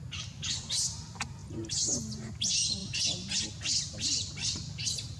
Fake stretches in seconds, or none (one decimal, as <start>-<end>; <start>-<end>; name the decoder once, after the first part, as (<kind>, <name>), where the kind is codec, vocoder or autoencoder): none